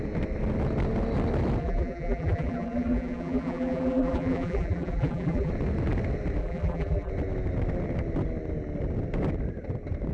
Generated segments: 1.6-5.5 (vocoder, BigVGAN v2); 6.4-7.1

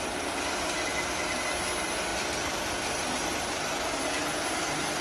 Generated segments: 2.1-4.0 (vocoder, BigVGAN v2)

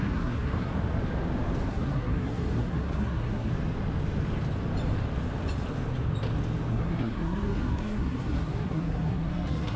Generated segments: 0.0-0.7 (codec, SNAC); 1.7-3.5; 6.7-9.8

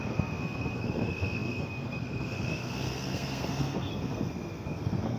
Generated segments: 0.0-5.2 (codec, SNAC)

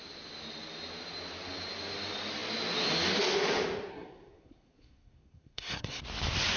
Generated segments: 3.9-6.0 (codec, SNAC)

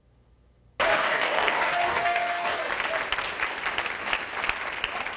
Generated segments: 0.9-2.7 (codec, DAC)